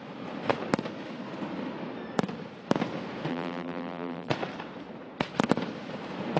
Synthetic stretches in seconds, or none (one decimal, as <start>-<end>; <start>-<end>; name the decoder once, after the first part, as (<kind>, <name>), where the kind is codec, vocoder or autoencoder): 3.3-4.3 (vocoder, BigVGAN v2)